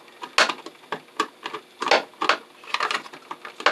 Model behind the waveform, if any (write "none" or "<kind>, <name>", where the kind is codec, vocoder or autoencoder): none